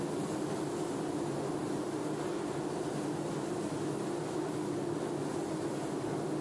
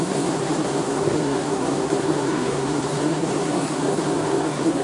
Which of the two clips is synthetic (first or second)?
second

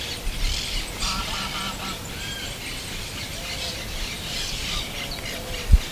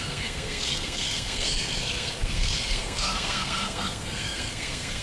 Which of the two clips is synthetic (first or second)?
second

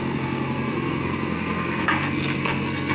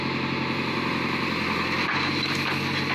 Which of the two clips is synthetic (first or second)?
first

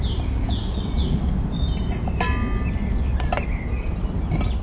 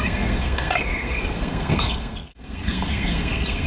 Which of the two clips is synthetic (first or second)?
second